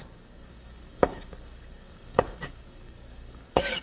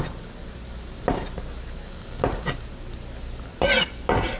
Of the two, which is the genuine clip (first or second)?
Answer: second